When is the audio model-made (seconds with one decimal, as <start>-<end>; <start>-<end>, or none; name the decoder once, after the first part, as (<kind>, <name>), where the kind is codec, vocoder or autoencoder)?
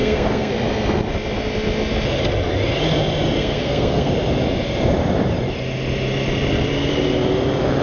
0.0-0.5 (codec, SNAC); 3.4-4.1